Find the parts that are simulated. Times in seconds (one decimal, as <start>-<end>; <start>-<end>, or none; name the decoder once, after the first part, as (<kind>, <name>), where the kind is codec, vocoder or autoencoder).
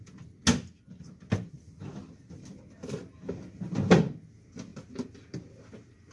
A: none